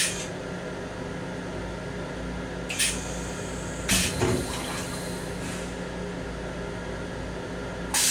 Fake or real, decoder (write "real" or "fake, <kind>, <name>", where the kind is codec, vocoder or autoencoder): real